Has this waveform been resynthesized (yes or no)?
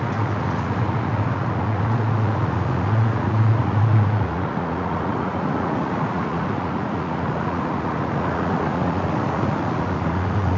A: yes